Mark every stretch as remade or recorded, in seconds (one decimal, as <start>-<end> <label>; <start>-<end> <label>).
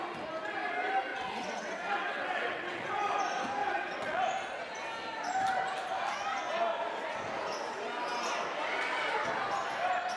0.0-1.1 recorded; 1.1-3.1 remade; 3.1-3.6 recorded; 3.6-4.2 remade; 4.2-10.2 recorded